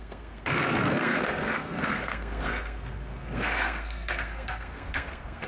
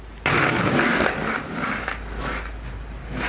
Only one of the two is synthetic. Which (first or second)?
first